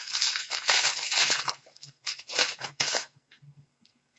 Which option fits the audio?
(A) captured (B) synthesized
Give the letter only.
B